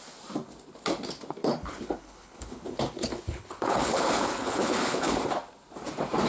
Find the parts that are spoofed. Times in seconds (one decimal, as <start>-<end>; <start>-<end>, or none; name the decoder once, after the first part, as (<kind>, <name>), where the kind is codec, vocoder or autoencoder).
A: 1.4-5.2 (codec, HILCodec)